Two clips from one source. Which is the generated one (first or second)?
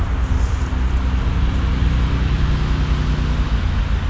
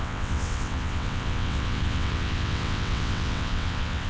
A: second